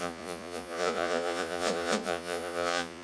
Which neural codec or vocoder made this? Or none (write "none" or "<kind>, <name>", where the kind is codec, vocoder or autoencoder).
vocoder, Vocos